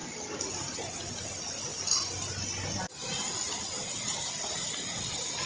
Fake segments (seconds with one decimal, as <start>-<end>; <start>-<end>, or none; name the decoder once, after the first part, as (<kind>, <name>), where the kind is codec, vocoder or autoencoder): 3.4-4.6 (vocoder, BigVGAN v2)